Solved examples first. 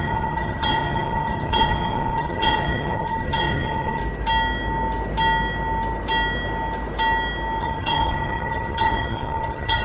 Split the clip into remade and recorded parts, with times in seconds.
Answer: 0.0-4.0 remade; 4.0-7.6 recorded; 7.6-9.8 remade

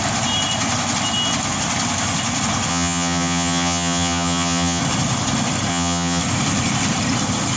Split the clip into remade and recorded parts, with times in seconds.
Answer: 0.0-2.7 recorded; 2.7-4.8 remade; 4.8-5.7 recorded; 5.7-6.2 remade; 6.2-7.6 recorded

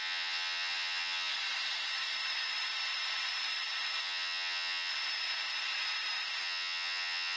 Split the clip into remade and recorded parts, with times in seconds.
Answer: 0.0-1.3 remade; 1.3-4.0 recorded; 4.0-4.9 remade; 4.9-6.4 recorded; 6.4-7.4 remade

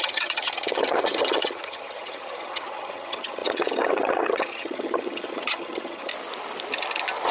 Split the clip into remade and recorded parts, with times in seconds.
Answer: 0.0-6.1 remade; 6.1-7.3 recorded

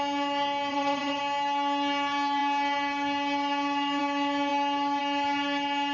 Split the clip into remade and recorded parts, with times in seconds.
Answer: 0.0-0.7 recorded; 0.7-1.2 remade; 1.2-5.9 recorded

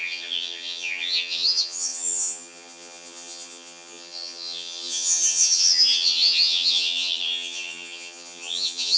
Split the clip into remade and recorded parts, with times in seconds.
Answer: 0.0-9.0 remade